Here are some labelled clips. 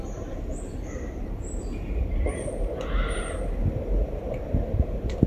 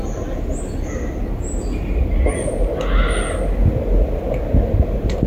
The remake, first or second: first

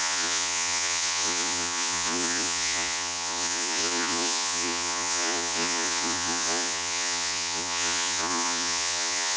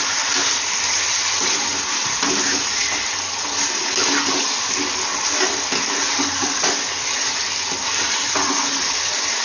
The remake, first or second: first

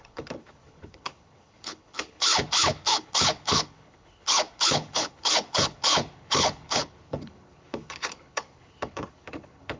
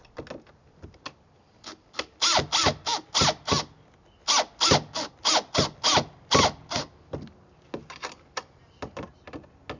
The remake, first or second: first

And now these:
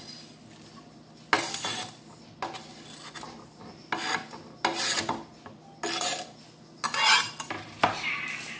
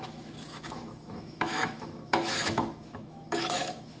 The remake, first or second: second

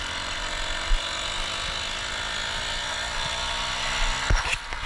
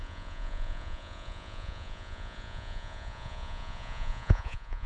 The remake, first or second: second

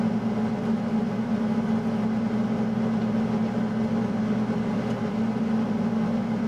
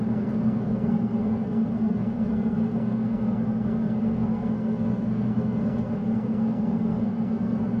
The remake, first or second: second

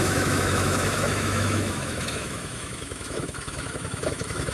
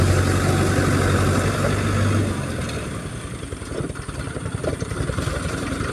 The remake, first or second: first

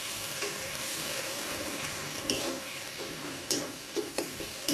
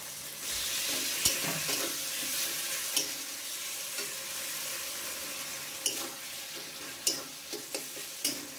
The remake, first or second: first